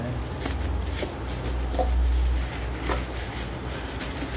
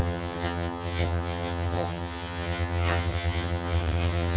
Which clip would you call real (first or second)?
first